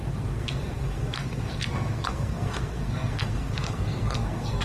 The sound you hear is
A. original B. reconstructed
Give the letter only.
B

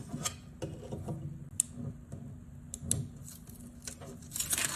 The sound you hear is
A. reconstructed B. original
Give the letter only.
B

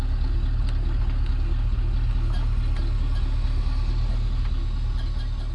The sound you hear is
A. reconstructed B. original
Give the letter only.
B